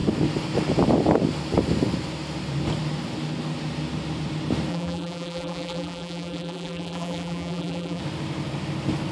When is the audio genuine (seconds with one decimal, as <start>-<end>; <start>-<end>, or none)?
0.0-4.7; 8.0-9.1

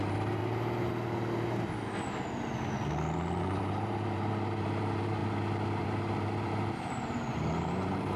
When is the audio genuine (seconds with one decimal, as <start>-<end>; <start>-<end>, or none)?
0.4-3.4; 5.2-5.8

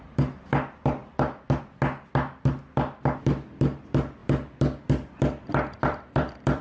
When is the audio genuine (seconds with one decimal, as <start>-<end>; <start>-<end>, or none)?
0.0-5.8

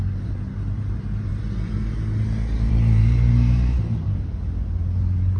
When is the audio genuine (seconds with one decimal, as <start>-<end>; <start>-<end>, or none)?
1.3-2.7

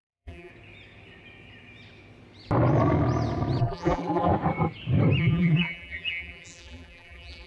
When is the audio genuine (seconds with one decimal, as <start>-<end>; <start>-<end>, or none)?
0.5-3.6; 4.3-5.2

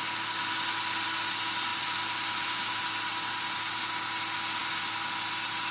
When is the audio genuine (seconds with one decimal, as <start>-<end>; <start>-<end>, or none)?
0.0-1.7; 2.8-5.7

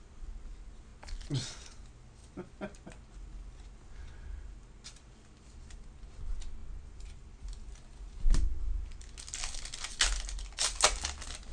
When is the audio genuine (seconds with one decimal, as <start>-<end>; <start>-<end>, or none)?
0.0-11.5